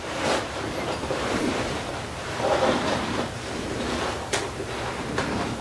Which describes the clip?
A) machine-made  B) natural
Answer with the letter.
A